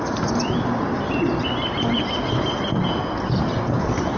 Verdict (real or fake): real